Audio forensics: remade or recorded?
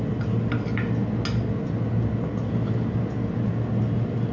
recorded